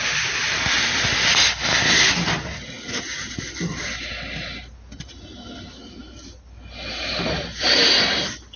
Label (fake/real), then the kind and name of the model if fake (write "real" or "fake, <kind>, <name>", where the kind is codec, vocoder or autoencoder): real